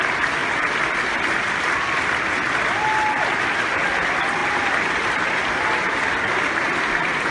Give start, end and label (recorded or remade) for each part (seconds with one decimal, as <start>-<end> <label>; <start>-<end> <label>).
0.0-0.4 recorded; 0.4-1.1 remade; 1.1-4.4 recorded; 4.4-6.5 remade; 6.5-7.3 recorded